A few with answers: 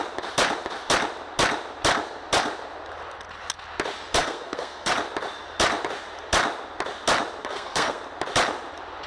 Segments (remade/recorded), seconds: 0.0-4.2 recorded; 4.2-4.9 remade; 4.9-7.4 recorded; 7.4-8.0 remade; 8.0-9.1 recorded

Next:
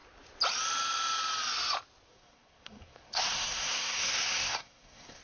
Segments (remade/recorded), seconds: 0.0-2.1 recorded; 2.1-5.2 remade

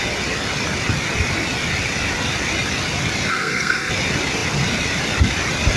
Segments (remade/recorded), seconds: 0.0-3.3 recorded; 3.3-3.9 remade; 3.9-5.8 recorded

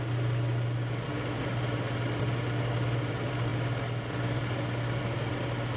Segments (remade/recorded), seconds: 0.0-5.8 recorded

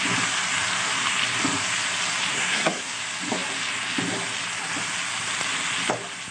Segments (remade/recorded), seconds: 0.0-2.3 recorded; 2.3-3.0 remade; 3.0-6.3 recorded